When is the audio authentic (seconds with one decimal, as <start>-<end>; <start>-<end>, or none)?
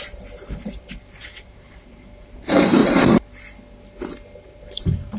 2.8-4.4